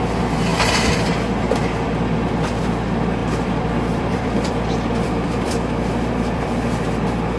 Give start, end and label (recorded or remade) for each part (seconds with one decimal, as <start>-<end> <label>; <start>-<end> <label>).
0.0-0.5 recorded; 0.5-1.1 remade; 1.1-1.6 recorded; 1.6-2.6 remade; 2.6-3.2 recorded; 3.2-6.8 remade; 6.8-7.4 recorded